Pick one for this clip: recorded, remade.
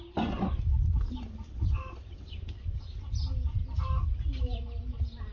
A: recorded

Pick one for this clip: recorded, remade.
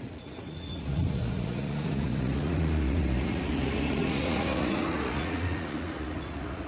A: remade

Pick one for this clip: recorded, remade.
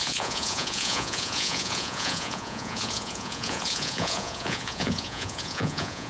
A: remade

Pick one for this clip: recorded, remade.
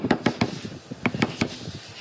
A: recorded